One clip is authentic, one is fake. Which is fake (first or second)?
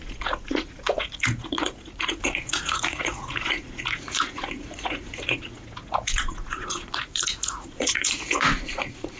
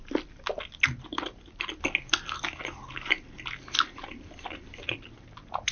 first